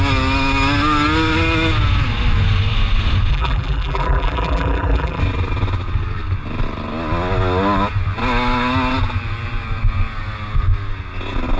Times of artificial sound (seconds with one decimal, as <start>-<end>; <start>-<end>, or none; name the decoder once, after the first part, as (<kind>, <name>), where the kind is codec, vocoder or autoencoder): 3.3-5.2 (vocoder, BigVGAN v2)